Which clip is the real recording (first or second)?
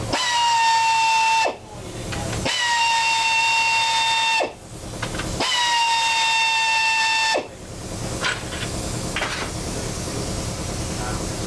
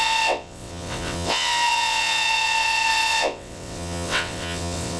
first